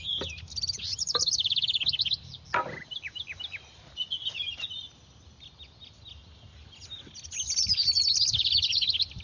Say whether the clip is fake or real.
real